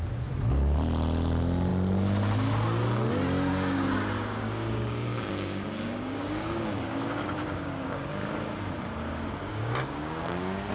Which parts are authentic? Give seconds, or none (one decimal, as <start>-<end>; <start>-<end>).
0.0-3.5; 8.1-9.5